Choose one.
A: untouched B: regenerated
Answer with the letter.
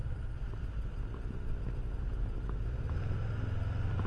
A